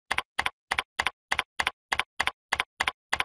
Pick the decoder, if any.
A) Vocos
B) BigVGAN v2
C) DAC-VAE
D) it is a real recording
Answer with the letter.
D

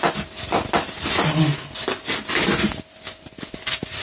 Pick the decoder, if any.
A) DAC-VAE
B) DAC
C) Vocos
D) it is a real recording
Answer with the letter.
D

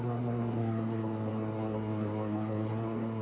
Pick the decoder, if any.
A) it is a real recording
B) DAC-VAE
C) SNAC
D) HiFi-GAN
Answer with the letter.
C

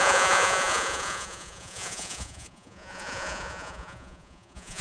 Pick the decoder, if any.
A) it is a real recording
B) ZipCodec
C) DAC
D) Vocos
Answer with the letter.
D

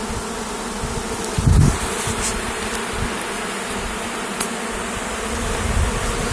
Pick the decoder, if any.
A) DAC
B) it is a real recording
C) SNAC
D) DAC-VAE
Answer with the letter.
B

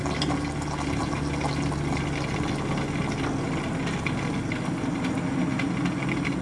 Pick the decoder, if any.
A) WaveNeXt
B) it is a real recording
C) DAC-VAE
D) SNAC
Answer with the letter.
B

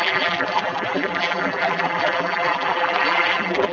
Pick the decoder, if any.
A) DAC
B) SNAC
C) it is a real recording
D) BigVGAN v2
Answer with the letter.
D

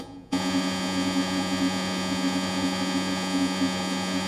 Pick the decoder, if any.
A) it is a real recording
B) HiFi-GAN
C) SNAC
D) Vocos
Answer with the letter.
D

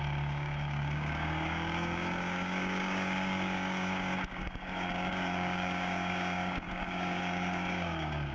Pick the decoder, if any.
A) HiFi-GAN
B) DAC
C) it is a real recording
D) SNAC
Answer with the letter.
B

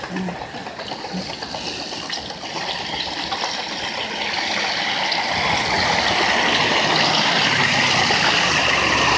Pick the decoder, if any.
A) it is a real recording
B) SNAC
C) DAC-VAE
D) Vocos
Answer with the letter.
A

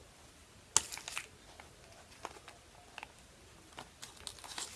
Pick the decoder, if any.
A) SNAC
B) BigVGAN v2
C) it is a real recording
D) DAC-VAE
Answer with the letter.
C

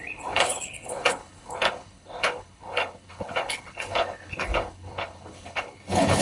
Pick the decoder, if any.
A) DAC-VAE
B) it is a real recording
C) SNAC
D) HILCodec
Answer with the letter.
D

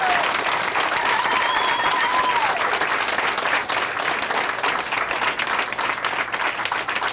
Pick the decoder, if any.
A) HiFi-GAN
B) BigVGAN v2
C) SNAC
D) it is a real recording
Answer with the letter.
D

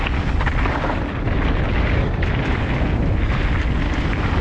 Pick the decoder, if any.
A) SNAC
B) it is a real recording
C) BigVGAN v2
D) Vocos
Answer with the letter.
B